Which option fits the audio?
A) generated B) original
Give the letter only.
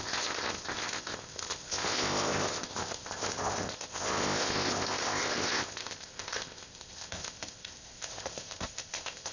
A